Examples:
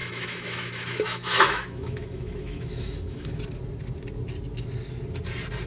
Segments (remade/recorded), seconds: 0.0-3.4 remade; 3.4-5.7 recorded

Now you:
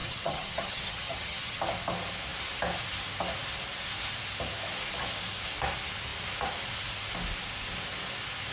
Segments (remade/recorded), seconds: 0.0-1.6 remade; 1.6-8.5 recorded

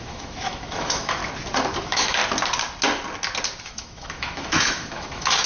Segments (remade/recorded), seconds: 0.0-1.2 remade; 1.2-1.8 recorded; 1.8-2.2 remade; 2.2-3.6 recorded; 3.6-5.5 remade

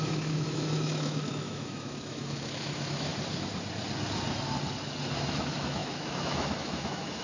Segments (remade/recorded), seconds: 0.0-3.1 remade; 3.1-5.3 recorded; 5.3-7.2 remade

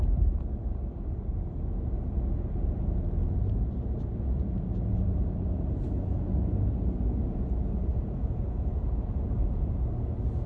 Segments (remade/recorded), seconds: 0.0-7.9 recorded; 7.9-9.2 remade; 9.2-10.5 recorded

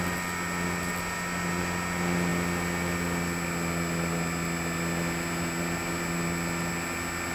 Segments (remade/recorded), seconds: 0.0-7.3 recorded

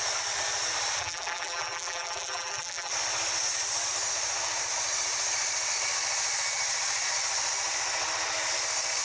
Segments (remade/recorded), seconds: 0.0-1.0 recorded; 1.0-2.9 remade; 2.9-9.0 recorded

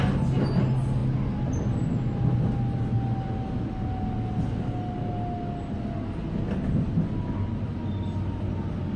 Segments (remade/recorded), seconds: 0.0-9.0 recorded